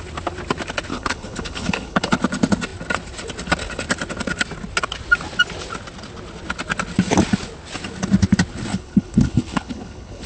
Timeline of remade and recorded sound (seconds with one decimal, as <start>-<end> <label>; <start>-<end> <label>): 0.0-0.9 recorded; 0.9-2.2 remade; 2.2-8.7 recorded; 8.7-10.3 remade